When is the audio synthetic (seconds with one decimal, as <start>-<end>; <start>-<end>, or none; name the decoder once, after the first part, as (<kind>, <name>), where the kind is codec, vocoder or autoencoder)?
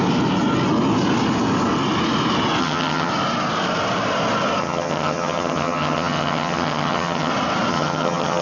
2.6-3.1 (vocoder, HiFi-GAN); 4.6-7.3; 7.7-8.4